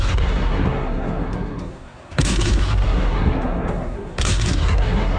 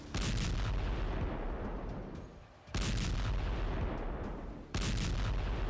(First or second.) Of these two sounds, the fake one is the first